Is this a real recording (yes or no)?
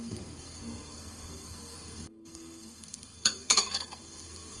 no